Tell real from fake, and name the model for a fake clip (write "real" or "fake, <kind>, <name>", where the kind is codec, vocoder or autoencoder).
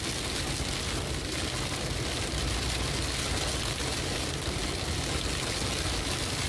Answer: real